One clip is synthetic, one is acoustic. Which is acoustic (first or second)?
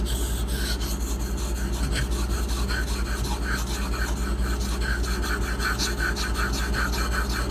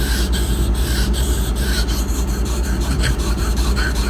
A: first